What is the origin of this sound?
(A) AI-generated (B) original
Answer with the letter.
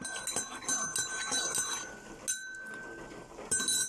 B